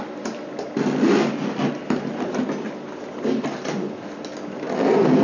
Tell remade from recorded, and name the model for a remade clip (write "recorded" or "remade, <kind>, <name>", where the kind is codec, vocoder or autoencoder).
recorded